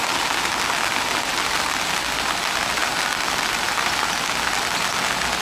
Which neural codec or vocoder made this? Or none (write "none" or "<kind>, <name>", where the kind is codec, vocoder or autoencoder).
none